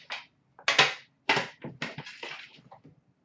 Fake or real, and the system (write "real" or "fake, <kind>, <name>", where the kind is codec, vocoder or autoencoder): real